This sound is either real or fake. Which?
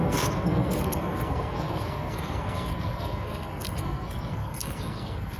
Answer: fake